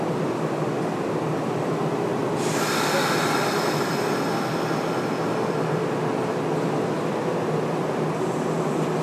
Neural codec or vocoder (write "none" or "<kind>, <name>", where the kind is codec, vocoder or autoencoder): none